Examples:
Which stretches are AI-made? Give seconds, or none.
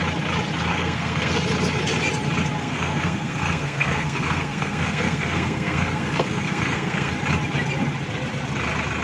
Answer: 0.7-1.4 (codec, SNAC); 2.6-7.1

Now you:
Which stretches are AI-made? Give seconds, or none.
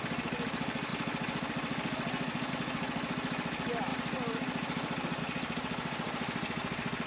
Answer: none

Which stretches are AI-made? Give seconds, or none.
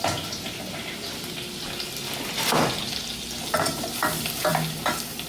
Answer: none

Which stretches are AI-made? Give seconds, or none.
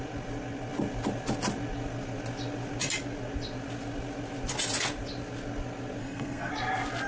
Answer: 6.0-6.5 (codec, SNAC)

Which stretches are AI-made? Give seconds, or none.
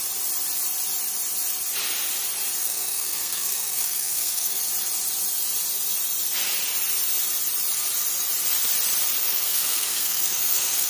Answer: 2.6-4.6 (codec, SNAC); 9.2-10.9